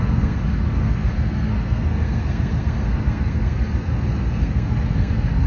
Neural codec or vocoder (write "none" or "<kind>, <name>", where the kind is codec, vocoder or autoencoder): codec, SNAC